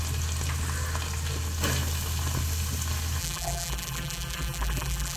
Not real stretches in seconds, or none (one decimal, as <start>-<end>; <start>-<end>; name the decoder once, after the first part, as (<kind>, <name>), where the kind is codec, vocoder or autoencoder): 3.2-5.2 (vocoder, BigVGAN v2)